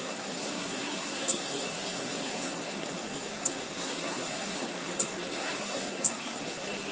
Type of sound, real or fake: fake